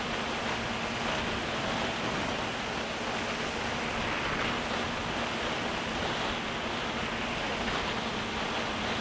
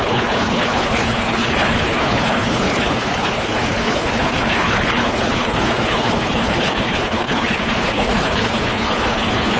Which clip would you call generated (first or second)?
second